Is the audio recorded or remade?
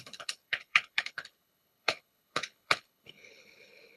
remade